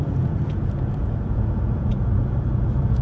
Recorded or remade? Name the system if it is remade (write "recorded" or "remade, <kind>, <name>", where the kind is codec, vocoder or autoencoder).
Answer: remade, vocoder, Vocos